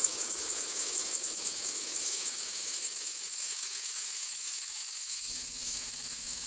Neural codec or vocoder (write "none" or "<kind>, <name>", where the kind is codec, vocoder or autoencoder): autoencoder, DAC-VAE